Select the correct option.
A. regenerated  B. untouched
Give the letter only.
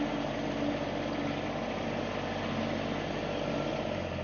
B